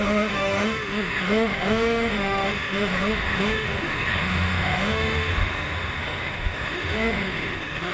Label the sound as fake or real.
fake